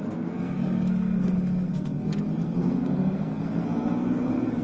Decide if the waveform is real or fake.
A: fake